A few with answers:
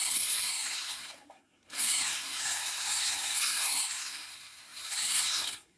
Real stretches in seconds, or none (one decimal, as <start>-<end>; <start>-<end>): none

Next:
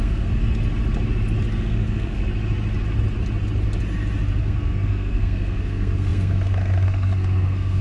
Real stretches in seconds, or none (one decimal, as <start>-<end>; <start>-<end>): 0.4-1.6; 2.2-4.4

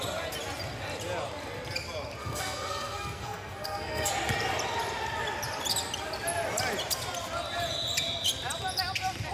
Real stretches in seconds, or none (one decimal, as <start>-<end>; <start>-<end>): 0.0-2.2; 4.1-9.3